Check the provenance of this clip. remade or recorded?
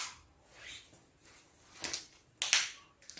recorded